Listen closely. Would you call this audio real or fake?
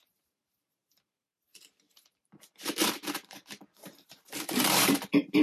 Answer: fake